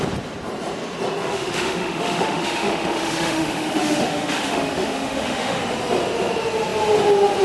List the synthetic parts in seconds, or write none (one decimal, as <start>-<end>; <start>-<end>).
1.2-5.6